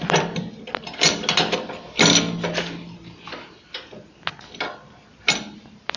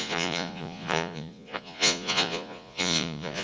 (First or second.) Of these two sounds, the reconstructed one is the second